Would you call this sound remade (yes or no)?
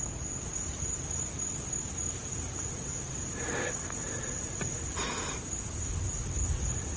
no